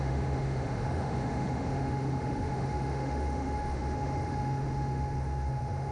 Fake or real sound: fake